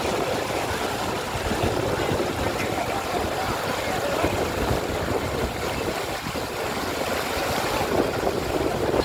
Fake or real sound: real